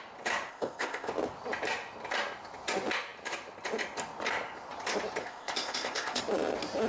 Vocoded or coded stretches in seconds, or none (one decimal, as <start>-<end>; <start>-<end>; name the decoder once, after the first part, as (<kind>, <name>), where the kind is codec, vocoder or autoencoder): 0.5-1.1 (codec, ZipCodec); 5.2-6.2